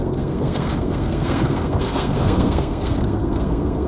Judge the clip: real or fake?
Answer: fake